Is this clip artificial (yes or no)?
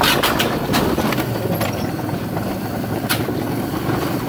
no